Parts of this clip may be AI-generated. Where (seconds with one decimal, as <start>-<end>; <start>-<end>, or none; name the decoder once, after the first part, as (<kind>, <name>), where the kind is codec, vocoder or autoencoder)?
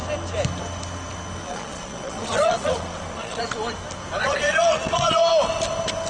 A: 1.4-3.4 (vocoder, Vocos); 4.2-5.3